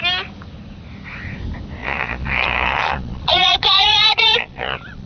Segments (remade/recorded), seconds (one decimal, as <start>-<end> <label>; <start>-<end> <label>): 0.0-1.8 recorded; 1.8-5.1 remade